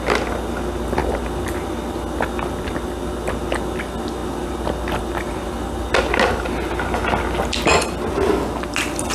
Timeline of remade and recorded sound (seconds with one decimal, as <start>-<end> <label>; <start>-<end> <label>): 0.0-9.1 recorded